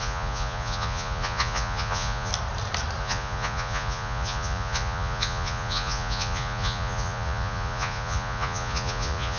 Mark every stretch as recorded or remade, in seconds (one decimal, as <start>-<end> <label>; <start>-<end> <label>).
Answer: 0.0-2.3 remade; 2.3-3.0 recorded; 3.0-9.4 remade